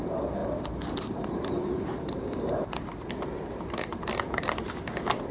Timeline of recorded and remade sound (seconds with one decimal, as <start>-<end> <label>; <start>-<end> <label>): 0.0-0.4 recorded; 0.4-3.1 remade; 3.1-3.9 recorded; 3.9-5.3 remade